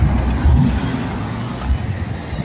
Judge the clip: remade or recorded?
recorded